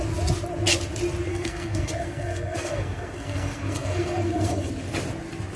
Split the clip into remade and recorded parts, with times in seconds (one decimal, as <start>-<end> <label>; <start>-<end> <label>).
0.0-1.3 recorded; 1.3-4.7 remade; 4.7-5.6 recorded